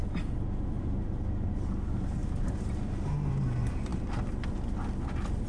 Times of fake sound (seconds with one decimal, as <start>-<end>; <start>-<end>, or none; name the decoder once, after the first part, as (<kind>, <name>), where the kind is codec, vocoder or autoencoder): none